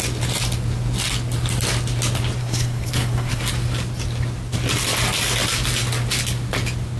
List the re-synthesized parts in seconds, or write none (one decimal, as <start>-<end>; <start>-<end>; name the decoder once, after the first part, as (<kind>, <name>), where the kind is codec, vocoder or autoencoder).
2.4-3.4 (codec, SNAC)